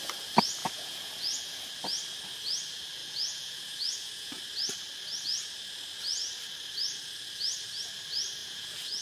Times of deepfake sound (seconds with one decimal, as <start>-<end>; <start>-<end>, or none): 0.6-1.6; 3.0-4.4; 8.4-9.0